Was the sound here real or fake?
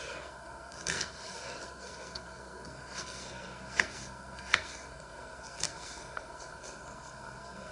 fake